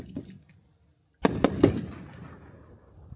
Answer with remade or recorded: recorded